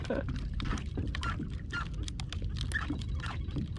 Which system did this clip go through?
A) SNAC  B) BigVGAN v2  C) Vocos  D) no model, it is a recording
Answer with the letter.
D